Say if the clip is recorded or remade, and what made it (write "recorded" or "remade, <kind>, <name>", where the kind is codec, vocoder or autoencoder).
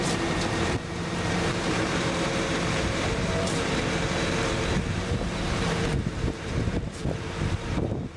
remade, vocoder, BigVGAN v2